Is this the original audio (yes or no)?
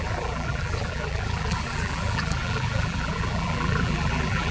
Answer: no